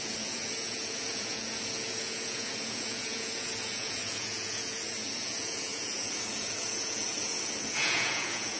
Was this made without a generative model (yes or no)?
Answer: no